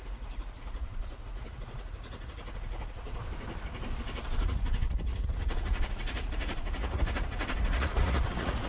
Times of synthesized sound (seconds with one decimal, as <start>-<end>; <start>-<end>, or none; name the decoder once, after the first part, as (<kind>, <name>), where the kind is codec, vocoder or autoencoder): 0.0-3.2 (vocoder, Vocos); 4.4-8.7

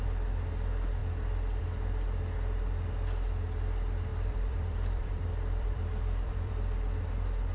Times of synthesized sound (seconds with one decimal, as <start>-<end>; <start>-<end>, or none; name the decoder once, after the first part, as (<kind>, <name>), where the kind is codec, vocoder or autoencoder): 4.1-6.5 (vocoder, BigVGAN v2)

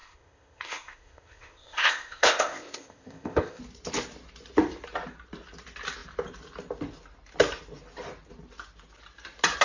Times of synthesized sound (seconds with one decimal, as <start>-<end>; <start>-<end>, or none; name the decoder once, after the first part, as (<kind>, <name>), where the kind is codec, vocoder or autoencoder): 0.0-3.6 (codec, ZipCodec)

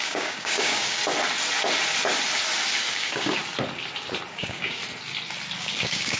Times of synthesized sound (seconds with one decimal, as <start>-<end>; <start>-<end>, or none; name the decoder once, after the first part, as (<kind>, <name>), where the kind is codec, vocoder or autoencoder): 0.0-1.0 (codec, DAC); 2.9-3.4; 4.3-4.8; 5.6-6.2